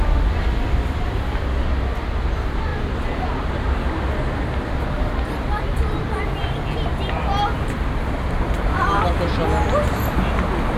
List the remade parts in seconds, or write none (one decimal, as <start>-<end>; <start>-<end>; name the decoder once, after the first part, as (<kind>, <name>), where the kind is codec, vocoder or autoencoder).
none

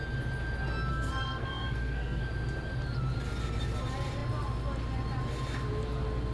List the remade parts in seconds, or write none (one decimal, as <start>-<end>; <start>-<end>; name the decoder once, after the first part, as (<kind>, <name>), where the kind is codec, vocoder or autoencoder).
0.9-2.2 (codec, SNAC)

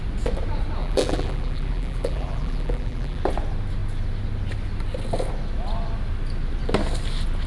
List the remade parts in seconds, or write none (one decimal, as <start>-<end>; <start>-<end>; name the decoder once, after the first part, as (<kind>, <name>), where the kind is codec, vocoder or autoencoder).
0.8-3.2 (vocoder, BigVGAN v2)

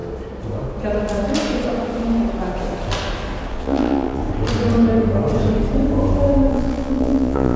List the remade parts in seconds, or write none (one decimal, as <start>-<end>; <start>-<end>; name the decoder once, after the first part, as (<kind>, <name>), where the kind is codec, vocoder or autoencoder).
3.5-4.2 (vocoder, Vocos); 6.5-7.6

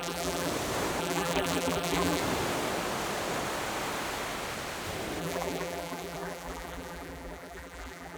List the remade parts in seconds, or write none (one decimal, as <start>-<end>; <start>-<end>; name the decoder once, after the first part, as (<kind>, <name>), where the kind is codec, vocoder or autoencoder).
0.0-0.5 (vocoder, BigVGAN v2); 1.0-2.2; 5.2-8.2

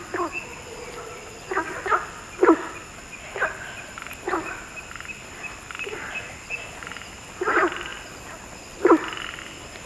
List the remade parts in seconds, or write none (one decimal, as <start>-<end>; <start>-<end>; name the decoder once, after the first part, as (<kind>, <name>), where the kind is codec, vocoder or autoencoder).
none

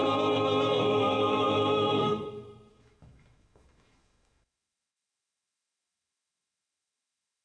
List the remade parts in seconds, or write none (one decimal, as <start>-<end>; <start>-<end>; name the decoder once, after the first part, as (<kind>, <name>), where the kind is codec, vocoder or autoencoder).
0.8-2.1 (autoencoder, DAC-VAE); 2.7-7.4

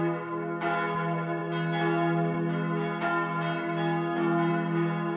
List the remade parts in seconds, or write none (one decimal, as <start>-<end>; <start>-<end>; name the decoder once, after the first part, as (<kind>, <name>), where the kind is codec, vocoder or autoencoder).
none